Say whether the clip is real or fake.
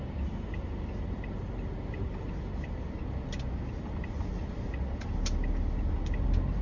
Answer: real